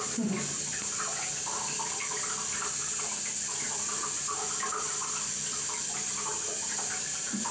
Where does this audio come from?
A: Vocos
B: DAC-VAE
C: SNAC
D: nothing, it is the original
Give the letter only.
D